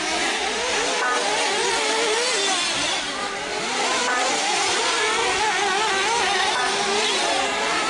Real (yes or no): yes